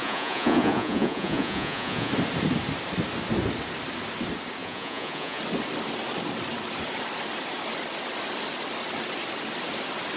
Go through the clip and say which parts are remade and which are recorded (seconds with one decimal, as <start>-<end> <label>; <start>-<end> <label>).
0.0-2.1 remade; 2.1-4.6 recorded; 4.6-5.4 remade; 5.4-10.2 recorded